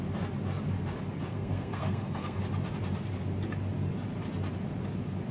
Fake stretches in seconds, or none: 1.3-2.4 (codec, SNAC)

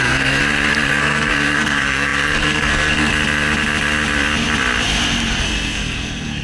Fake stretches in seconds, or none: 0.0-0.4 (codec, SNAC); 0.9-3.1; 5.4-6.4

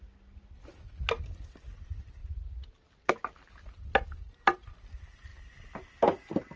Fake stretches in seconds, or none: none

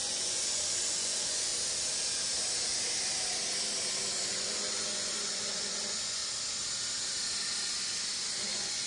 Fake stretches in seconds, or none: 0.0-1.5 (vocoder, Vocos); 4.3-6.2; 8.4-8.9

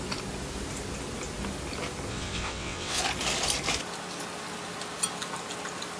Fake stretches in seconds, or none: 2.1-3.0 (vocoder, WaveNeXt)

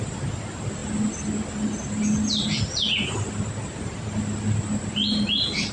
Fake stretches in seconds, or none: none

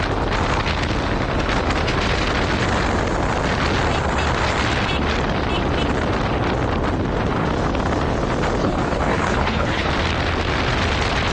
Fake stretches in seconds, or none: 8.6-9.9 (codec, HILCodec)

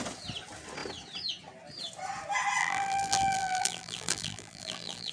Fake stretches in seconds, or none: 2.6-5.1 (vocoder, BigVGAN v2)